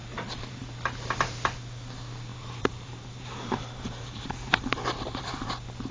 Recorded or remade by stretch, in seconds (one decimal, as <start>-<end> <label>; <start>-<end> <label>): 0.0-0.6 remade; 0.6-2.3 recorded; 2.3-5.5 remade; 5.5-5.9 recorded